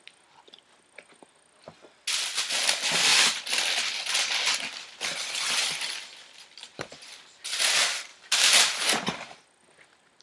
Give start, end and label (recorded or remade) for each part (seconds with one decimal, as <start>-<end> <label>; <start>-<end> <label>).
0.0-6.7 recorded; 6.7-7.4 remade; 7.4-8.1 recorded; 8.1-9.4 remade; 9.4-10.2 recorded